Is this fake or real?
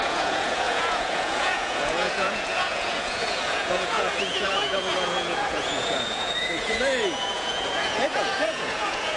fake